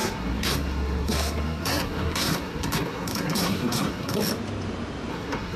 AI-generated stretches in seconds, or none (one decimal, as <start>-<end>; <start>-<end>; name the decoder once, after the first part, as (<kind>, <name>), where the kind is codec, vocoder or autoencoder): 0.0-4.2 (codec, SNAC); 5.1-5.6